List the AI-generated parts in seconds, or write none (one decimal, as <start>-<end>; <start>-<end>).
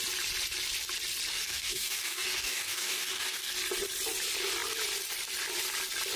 1.3-3.5